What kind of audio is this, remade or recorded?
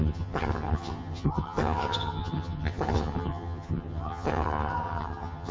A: remade